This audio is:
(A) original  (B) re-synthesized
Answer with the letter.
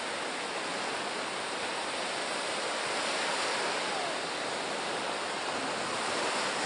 A